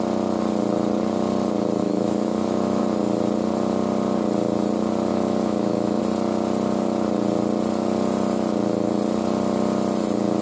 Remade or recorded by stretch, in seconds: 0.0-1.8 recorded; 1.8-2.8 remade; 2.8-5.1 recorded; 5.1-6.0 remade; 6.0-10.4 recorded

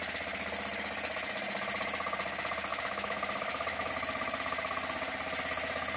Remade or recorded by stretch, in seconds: 0.0-2.7 recorded; 2.7-3.9 remade; 3.9-6.0 recorded

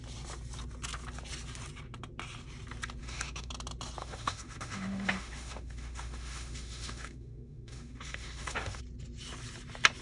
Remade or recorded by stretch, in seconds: 0.0-3.0 recorded; 3.0-3.5 remade; 3.5-4.0 recorded; 4.0-8.8 remade; 8.8-10.0 recorded

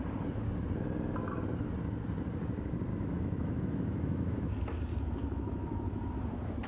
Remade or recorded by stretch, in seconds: 0.0-2.9 recorded; 2.9-4.5 remade; 4.5-4.9 recorded; 4.9-6.1 remade; 6.1-6.7 recorded

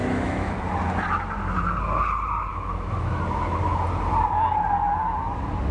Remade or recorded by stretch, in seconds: 0.0-0.6 remade; 0.6-2.5 recorded; 2.5-3.2 remade; 3.2-5.7 recorded

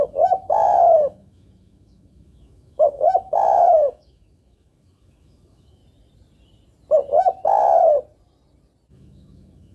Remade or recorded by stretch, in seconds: 0.0-5.8 remade; 5.8-8.9 recorded; 8.9-9.7 remade